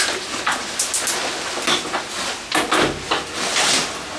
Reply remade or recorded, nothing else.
recorded